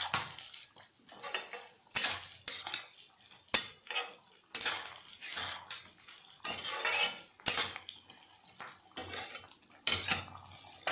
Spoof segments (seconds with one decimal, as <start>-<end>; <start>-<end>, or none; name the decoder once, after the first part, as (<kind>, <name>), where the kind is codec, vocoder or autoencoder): none